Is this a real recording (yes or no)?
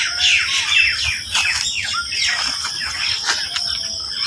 yes